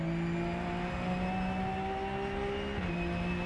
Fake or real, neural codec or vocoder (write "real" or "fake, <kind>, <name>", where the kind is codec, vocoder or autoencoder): real